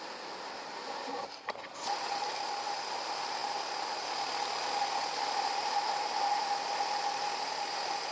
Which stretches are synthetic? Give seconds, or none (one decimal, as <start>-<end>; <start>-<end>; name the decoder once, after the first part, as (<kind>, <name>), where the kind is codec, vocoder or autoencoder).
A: none